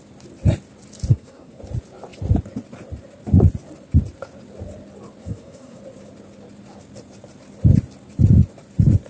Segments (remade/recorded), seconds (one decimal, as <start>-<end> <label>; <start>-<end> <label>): 0.0-1.1 recorded; 1.1-1.6 remade; 1.6-5.2 recorded; 5.2-5.8 remade; 5.8-9.1 recorded